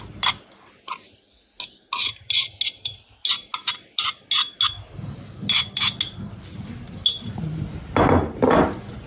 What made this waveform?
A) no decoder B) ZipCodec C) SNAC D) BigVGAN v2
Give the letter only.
A